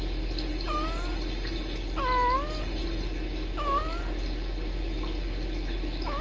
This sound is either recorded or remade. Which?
recorded